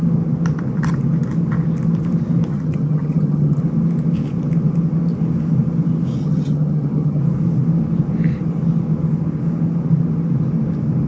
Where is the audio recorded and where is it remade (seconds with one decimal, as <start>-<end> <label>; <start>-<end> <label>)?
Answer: 0.0-2.5 recorded; 2.5-3.6 remade; 3.6-6.2 recorded; 6.2-7.2 remade; 7.2-11.1 recorded